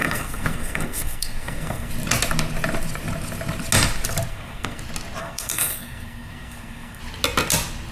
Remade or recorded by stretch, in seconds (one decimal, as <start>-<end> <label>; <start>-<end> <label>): 0.0-1.9 remade; 1.9-4.3 recorded; 4.3-4.8 remade; 4.8-5.2 recorded; 5.2-7.0 remade; 7.0-7.9 recorded